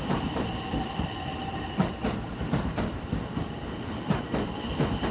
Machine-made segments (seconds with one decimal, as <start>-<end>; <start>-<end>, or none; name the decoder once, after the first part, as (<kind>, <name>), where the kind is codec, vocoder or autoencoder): none